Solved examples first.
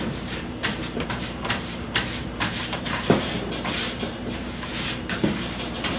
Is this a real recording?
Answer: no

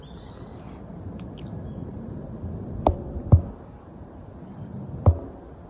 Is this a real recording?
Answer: yes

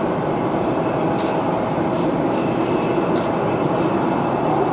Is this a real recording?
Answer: yes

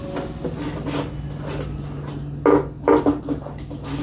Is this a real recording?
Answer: yes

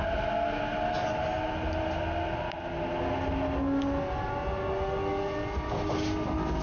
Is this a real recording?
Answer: yes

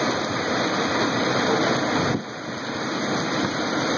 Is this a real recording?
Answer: yes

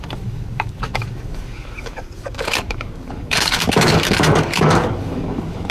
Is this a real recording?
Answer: no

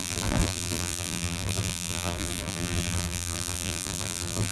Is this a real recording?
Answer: no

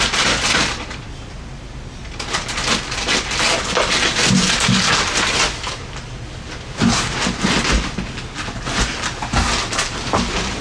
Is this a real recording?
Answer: yes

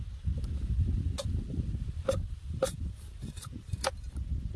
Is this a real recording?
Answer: yes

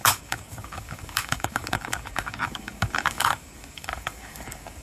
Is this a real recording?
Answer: no